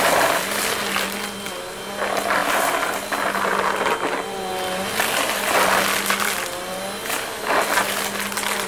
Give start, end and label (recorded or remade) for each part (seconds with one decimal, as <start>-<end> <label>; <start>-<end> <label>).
0.0-8.7 recorded